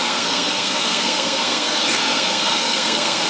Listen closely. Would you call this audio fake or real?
fake